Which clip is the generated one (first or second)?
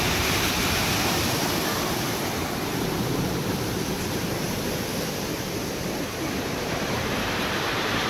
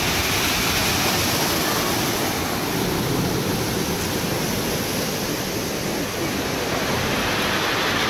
first